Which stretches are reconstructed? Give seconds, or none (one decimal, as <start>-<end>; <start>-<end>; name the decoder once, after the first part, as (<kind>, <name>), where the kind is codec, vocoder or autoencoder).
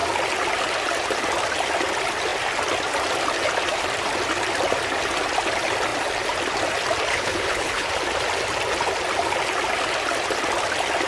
7.1-7.9 (codec, HILCodec)